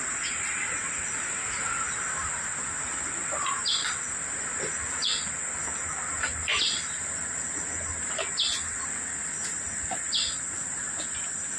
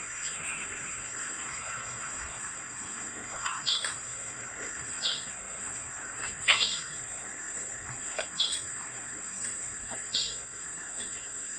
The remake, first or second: second